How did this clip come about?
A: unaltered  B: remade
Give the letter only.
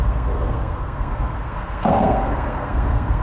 B